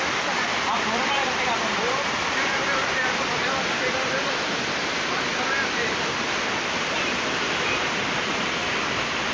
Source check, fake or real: fake